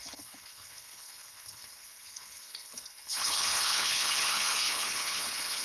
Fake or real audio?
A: fake